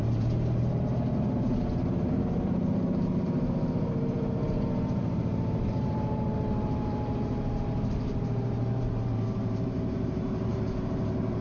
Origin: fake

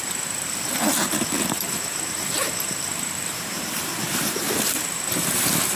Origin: fake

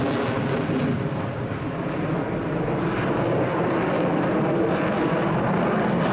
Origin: real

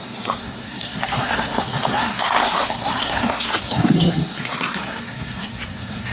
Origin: fake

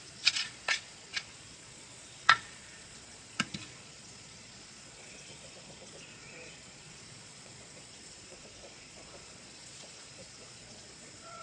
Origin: fake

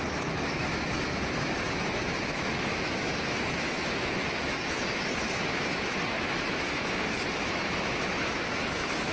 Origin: fake